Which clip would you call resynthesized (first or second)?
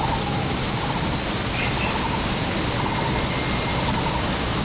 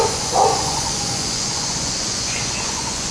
second